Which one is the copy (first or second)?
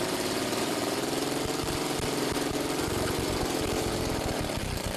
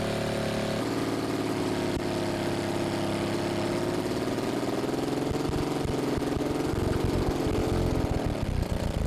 first